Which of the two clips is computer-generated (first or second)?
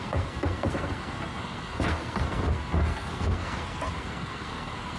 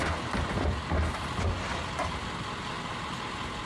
first